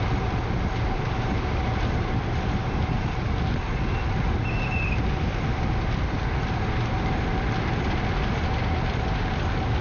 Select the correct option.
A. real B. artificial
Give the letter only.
A